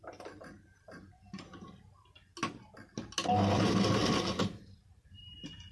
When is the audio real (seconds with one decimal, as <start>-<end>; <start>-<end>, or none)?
2.3-4.4